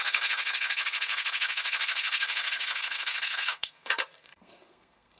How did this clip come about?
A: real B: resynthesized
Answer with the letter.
B